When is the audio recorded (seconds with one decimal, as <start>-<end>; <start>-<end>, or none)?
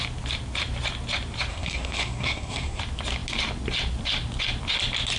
0.0-1.5; 2.8-5.2